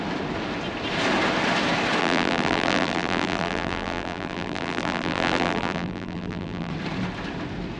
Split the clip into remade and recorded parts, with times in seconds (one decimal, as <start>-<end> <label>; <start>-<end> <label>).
0.0-2.0 recorded; 2.0-6.7 remade; 6.7-7.8 recorded